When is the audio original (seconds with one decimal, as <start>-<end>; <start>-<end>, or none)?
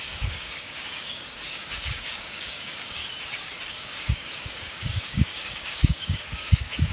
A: 3.0-3.7